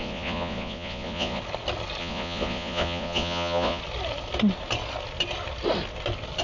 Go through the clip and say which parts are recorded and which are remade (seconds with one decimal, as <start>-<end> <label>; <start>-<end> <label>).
0.0-1.4 remade; 1.4-2.0 recorded; 2.0-3.8 remade; 3.8-6.4 recorded